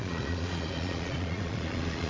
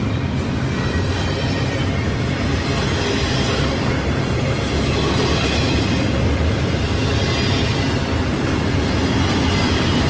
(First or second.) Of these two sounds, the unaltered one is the second